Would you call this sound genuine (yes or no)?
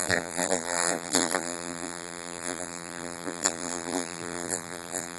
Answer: no